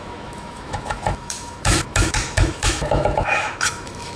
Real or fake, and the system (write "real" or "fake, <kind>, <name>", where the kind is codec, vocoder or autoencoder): fake, autoencoder, DAC-VAE